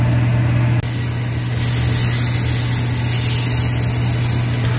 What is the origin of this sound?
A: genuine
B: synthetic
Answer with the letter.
A